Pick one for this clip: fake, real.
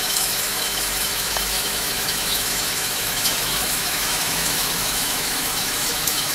fake